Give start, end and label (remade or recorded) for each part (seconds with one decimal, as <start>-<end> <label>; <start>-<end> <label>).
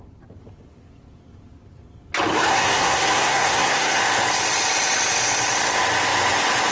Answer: 0.0-2.5 recorded; 2.5-4.0 remade; 4.0-6.7 recorded